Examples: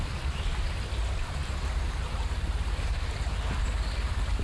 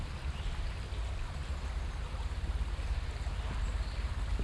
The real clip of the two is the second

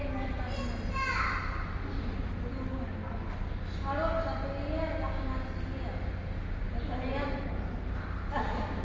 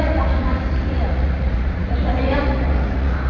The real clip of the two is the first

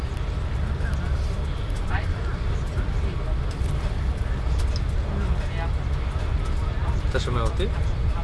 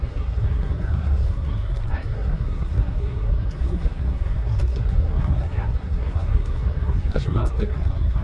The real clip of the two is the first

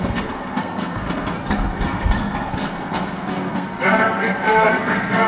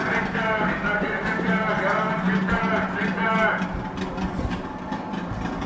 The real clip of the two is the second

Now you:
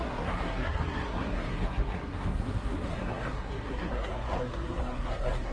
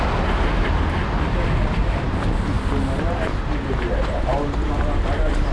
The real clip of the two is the second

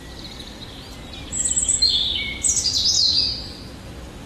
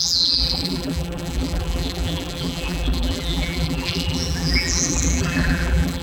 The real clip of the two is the first